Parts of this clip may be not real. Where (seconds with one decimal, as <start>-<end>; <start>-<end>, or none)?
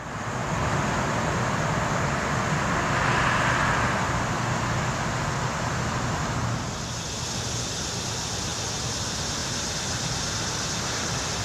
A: none